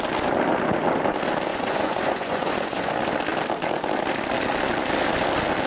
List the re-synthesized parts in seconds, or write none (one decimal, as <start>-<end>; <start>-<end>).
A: 1.5-2.9